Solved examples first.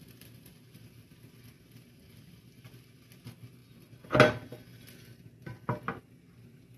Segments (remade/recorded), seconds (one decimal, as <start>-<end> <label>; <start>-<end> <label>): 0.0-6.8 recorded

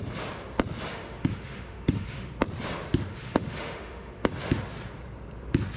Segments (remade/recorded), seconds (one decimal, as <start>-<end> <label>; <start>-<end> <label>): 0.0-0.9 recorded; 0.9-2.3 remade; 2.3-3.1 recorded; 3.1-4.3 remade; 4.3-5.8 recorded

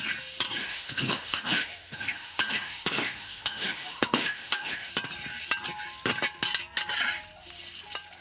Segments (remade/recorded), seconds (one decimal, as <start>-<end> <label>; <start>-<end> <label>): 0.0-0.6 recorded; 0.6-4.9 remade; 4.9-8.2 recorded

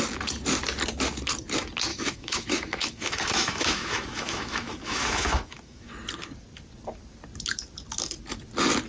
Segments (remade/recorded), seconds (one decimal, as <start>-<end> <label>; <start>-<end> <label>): 0.0-1.9 recorded; 1.9-5.9 remade; 5.9-8.9 recorded

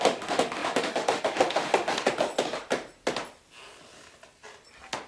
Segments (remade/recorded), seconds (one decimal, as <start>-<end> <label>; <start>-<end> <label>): 0.0-1.9 remade; 1.9-5.1 recorded

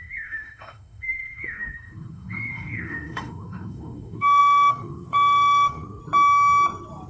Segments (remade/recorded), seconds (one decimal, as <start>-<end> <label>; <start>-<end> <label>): 0.0-6.0 remade; 6.0-7.1 recorded

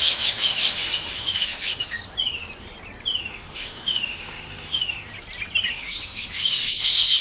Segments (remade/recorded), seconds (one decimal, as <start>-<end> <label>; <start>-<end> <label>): 0.0-2.0 remade; 2.0-3.2 recorded; 3.2-5.1 remade; 5.1-5.7 recorded; 5.7-7.2 remade